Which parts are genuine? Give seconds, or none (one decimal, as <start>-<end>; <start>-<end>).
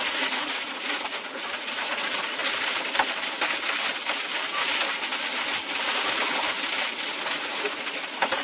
2.4-7.3